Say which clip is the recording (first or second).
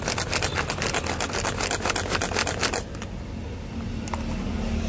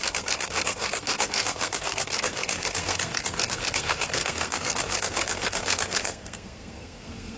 first